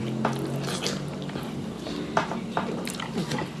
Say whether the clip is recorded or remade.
recorded